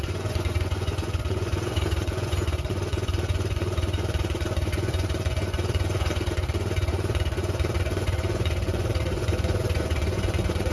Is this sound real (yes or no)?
no